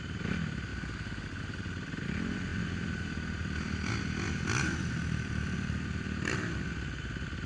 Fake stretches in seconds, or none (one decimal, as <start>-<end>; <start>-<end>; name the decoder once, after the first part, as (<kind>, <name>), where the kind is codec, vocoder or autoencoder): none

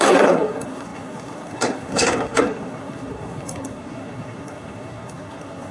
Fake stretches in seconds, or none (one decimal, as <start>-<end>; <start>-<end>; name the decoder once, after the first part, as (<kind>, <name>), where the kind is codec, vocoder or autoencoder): 0.0-5.7 (codec, SNAC)

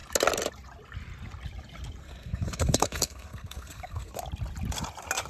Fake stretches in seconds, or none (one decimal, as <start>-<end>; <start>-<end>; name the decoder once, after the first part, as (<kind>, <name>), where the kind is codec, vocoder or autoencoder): 2.0-4.1 (codec, SNAC)